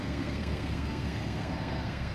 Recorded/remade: remade